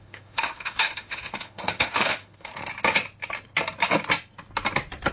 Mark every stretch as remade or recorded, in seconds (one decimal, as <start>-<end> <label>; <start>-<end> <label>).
0.0-2.5 remade; 2.5-5.1 recorded